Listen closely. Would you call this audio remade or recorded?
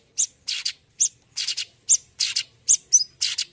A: recorded